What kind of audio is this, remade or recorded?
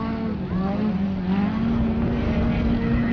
recorded